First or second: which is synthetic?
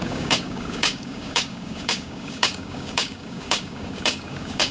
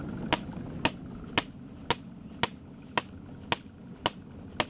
first